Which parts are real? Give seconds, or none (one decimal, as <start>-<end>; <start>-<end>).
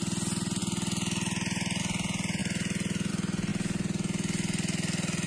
0.0-5.3